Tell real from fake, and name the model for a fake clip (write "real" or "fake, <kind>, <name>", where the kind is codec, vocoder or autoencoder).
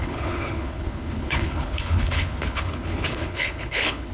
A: fake, codec, HILCodec